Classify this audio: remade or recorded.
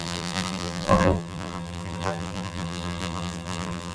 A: remade